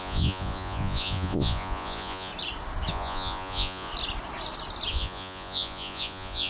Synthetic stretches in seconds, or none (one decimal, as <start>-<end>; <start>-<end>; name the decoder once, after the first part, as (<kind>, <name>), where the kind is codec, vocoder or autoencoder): 0.0-2.3 (vocoder, Vocos); 2.9-3.9; 4.9-6.5